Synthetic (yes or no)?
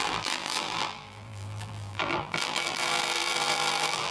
yes